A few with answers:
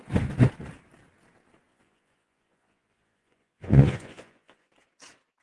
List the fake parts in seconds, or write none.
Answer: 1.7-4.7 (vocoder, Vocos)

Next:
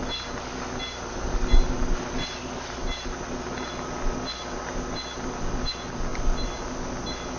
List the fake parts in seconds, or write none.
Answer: none

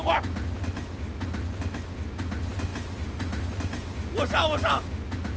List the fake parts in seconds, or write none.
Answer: none

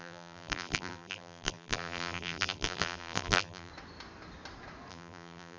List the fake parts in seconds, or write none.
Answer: 0.0-3.7 (vocoder, BigVGAN v2); 4.9-5.6

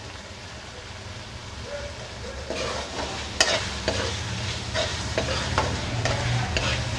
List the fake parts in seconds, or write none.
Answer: 4.9-6.6 (vocoder, BigVGAN v2)

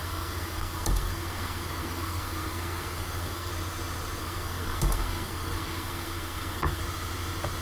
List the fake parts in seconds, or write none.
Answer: 0.0-3.5 (codec, SNAC); 4.2-6.8

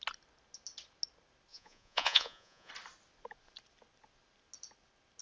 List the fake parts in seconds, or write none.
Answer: 1.5-2.7 (vocoder, Vocos)

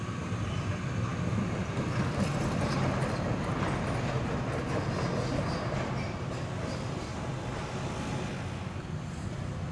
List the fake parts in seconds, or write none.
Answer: none